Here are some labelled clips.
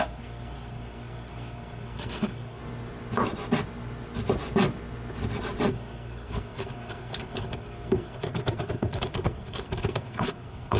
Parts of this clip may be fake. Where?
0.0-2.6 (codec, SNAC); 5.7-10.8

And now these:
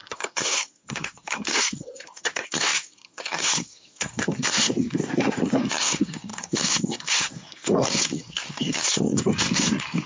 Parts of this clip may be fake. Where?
0.0-10.1 (codec, SNAC)

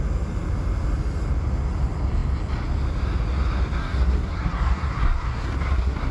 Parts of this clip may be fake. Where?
3.8-6.1 (codec, SNAC)

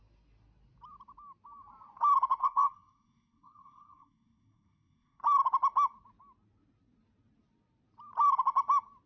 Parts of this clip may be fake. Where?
2.4-5.2 (codec, SNAC)

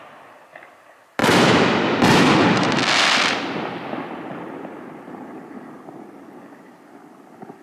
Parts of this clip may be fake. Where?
none

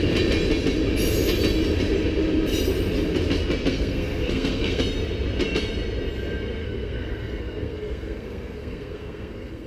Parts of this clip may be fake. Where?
3.7-4.8 (codec, SNAC); 6.6-9.7

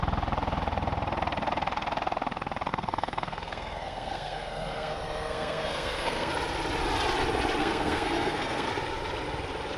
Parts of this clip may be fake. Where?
2.7-6.3 (codec, SNAC); 7.6-8.7